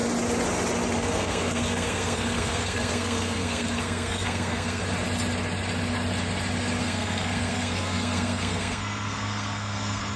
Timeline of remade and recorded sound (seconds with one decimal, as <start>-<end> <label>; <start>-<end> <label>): 0.0-1.0 recorded; 1.0-4.8 remade; 4.8-6.8 recorded; 6.8-10.2 remade